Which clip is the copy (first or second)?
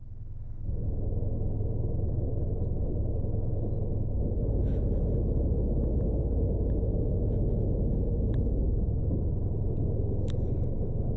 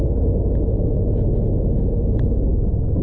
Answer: first